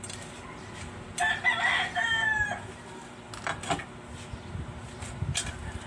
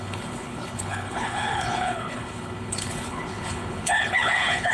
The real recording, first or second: first